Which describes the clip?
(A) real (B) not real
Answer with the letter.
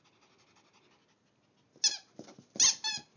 A